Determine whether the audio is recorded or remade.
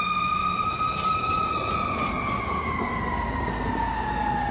recorded